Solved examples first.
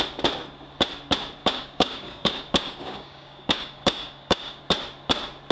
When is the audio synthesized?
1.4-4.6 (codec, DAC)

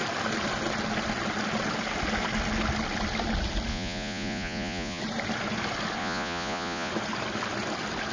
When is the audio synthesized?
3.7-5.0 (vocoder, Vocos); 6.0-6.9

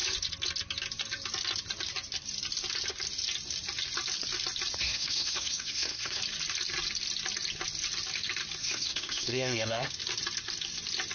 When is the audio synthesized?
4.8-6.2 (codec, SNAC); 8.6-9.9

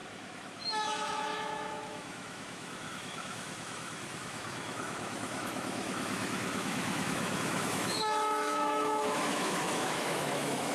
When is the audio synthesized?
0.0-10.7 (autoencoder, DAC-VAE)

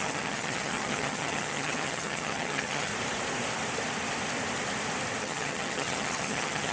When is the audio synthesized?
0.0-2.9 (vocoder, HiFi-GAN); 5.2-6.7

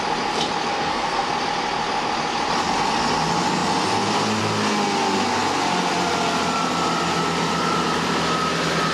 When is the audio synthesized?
0.7-1.3 (codec, SNAC)

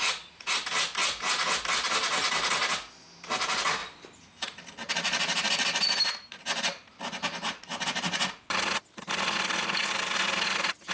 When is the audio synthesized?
none